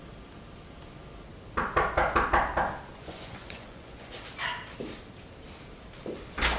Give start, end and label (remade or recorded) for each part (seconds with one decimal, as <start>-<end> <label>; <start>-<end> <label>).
0.0-2.9 recorded; 2.9-4.1 remade; 4.1-6.6 recorded